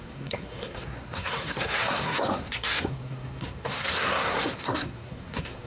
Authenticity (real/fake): fake